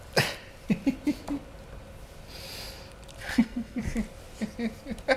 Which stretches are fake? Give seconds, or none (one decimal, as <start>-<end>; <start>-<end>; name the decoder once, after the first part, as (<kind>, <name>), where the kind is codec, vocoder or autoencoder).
3.2-3.8 (codec, SNAC)